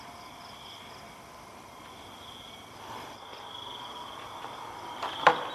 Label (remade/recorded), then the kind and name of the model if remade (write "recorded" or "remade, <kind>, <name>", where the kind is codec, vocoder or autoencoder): recorded